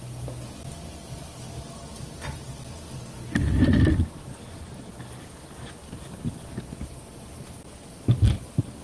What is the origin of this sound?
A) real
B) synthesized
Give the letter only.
A